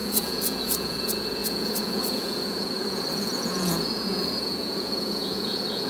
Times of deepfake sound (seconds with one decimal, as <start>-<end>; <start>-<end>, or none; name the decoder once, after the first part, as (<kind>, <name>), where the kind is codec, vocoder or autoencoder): 0.0-5.9 (vocoder, Vocos)